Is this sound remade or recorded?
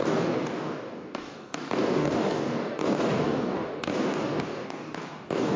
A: remade